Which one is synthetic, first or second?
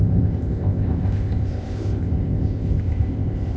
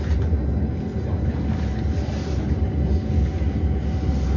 first